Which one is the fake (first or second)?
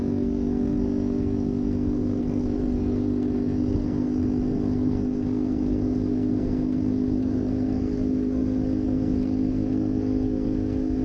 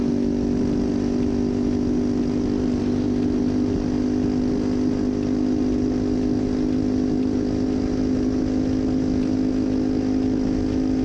first